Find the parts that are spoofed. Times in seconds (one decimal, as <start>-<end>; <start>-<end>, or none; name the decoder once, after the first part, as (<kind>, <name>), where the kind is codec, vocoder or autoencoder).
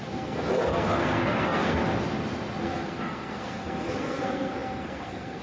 0.0-1.8 (codec, SNAC); 2.6-5.4